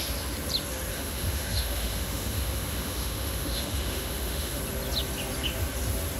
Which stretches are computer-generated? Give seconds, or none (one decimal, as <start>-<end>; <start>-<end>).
0.9-4.6